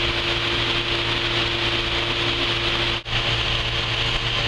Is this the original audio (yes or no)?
yes